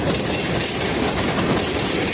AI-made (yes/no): no